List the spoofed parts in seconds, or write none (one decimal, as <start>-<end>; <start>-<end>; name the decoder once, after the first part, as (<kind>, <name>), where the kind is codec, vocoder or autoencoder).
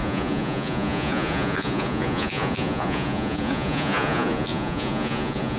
0.0-5.6 (vocoder, Vocos)